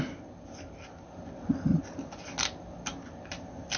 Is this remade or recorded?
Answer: recorded